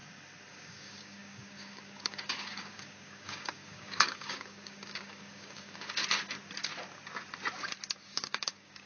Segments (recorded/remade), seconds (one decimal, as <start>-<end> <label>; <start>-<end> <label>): 0.0-0.5 recorded; 0.5-6.0 remade; 6.0-8.1 recorded; 8.1-8.9 remade